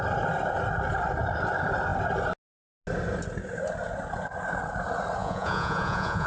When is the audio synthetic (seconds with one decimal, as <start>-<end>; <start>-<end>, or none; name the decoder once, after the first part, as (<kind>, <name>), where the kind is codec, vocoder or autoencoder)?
5.2-6.3 (vocoder, Vocos)